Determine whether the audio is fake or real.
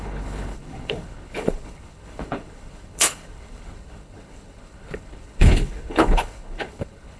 fake